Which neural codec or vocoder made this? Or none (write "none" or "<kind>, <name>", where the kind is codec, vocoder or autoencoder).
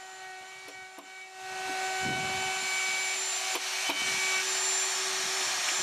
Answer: none